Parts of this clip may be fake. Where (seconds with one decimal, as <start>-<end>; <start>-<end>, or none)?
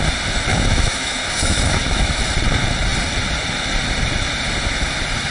0.5-2.2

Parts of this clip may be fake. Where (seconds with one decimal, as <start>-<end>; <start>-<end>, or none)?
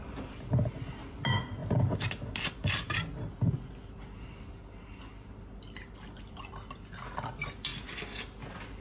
none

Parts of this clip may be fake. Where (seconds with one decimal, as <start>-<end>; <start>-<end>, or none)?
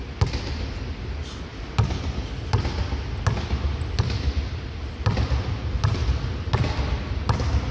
none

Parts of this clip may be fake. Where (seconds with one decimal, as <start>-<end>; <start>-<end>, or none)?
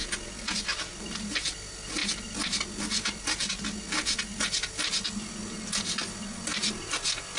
none